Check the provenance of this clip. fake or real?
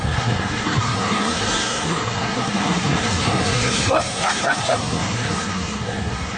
fake